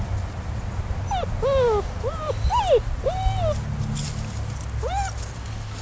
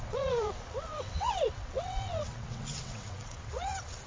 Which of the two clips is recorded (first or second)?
first